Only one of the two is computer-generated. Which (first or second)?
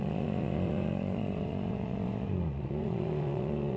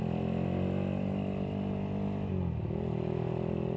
first